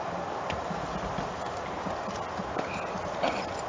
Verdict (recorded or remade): recorded